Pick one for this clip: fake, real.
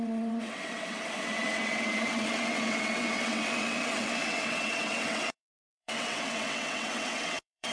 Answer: fake